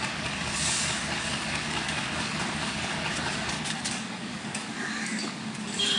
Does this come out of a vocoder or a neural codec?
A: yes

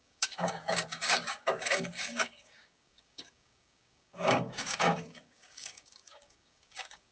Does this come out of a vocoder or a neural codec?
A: yes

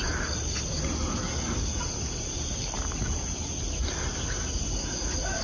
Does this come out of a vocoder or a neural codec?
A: no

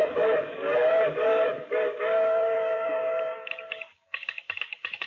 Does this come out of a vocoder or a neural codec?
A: yes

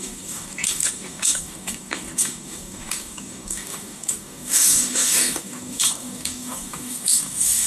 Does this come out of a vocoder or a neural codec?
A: yes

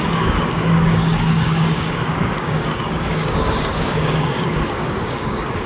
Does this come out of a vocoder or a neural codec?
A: yes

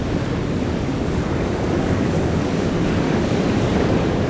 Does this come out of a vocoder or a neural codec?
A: yes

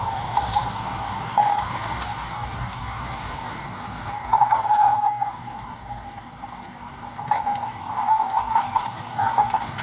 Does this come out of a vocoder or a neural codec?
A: yes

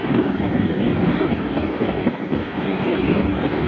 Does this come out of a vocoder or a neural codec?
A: yes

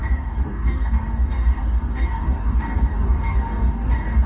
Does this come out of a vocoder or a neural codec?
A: yes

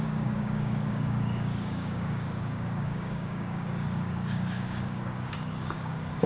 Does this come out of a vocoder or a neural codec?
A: yes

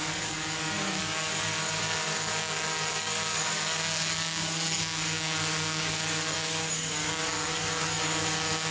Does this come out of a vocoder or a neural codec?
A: yes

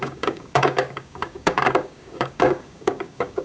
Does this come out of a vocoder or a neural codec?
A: yes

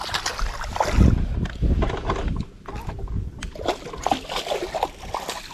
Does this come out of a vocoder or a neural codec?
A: no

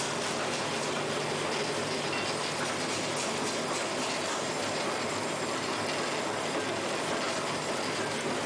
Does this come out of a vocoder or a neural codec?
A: no